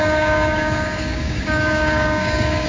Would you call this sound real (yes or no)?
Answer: no